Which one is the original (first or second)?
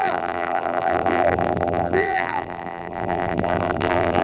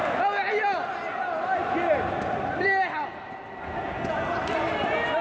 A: second